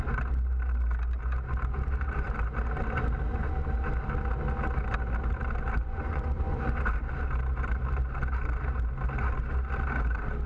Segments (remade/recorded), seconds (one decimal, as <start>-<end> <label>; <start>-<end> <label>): 0.0-5.8 recorded; 5.8-6.6 remade; 6.6-10.5 recorded